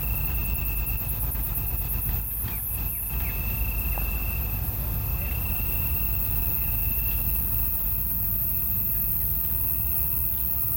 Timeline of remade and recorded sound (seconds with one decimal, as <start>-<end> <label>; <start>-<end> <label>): 0.0-5.1 recorded; 5.1-6.1 remade; 6.1-6.5 recorded; 6.5-7.1 remade; 7.1-7.7 recorded; 7.7-9.1 remade; 9.1-10.8 recorded